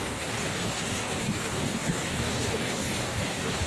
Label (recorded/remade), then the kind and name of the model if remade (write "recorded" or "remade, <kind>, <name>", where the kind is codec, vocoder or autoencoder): remade, codec, DAC